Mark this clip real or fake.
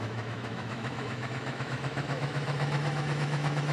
fake